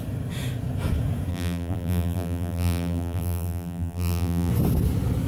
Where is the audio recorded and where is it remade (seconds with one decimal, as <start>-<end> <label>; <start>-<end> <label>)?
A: 0.0-1.3 recorded; 1.3-4.5 remade; 4.5-5.3 recorded